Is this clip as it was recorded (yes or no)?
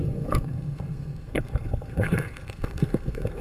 no